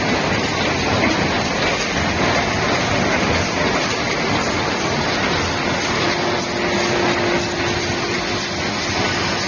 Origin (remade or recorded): recorded